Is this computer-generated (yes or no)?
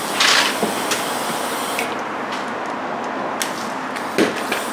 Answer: no